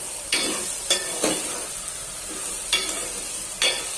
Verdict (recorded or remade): recorded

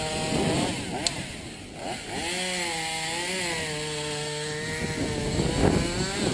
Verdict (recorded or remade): recorded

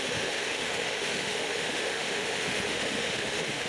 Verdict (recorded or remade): remade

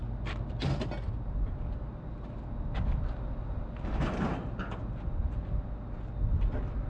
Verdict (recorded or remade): recorded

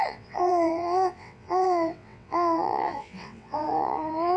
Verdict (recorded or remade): remade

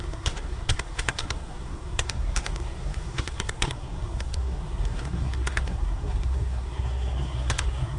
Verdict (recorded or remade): remade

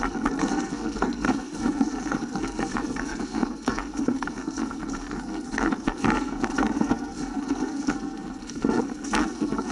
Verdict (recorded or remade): remade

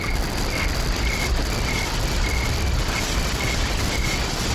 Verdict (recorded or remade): recorded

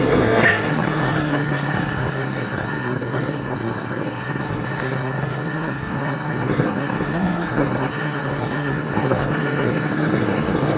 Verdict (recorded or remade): remade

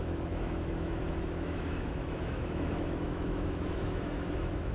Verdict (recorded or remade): remade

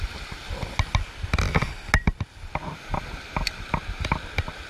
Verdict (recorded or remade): recorded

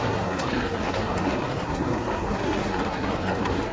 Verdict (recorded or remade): remade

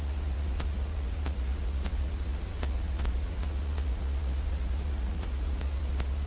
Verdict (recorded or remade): remade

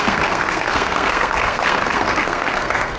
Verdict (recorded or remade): remade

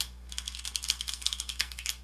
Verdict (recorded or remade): remade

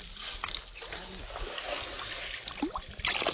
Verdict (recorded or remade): recorded